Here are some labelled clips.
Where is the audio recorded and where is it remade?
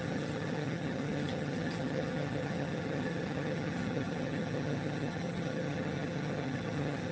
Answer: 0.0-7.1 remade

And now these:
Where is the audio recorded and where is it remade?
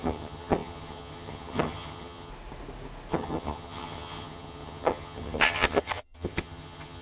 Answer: 0.0-2.3 remade; 2.3-3.1 recorded; 3.1-7.0 remade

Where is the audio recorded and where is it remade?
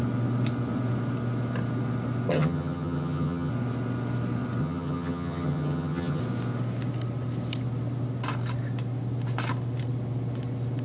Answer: 0.0-2.3 recorded; 2.3-3.5 remade; 3.5-4.6 recorded; 4.6-6.2 remade; 6.2-10.8 recorded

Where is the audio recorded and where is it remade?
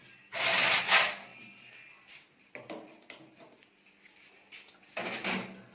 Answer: 0.0-5.7 recorded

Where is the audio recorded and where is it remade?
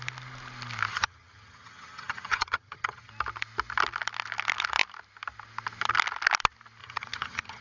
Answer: 0.0-0.9 recorded; 0.9-3.1 remade; 3.1-6.8 recorded; 6.8-7.6 remade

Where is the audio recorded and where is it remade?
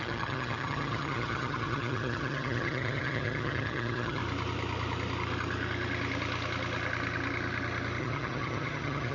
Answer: 0.0-4.2 remade; 4.2-8.0 recorded; 8.0-9.1 remade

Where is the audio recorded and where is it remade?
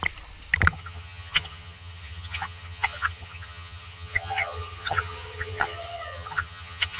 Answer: 0.0-0.7 recorded; 0.7-7.0 remade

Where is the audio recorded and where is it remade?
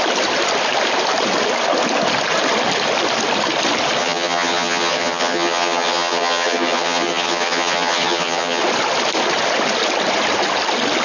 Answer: 0.0-4.0 recorded; 4.0-8.6 remade; 8.6-11.0 recorded